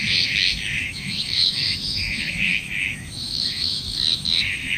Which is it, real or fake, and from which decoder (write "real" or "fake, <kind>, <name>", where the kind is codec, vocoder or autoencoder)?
fake, autoencoder, DAC-VAE